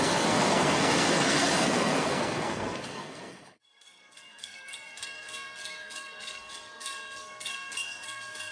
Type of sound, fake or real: fake